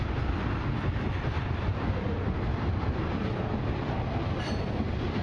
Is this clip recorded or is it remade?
recorded